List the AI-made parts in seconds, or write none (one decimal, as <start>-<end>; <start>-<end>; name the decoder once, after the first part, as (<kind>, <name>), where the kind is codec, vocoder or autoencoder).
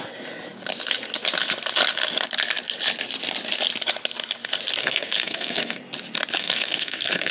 4.8-5.8 (codec, SNAC); 6.4-7.3